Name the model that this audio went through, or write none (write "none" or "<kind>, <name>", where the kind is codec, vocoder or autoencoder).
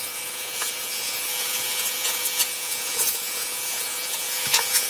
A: vocoder, Vocos